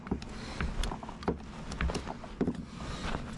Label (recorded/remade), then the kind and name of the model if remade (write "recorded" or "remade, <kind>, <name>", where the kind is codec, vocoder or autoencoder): recorded